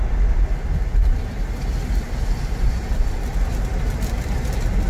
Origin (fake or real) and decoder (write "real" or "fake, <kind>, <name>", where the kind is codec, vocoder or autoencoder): real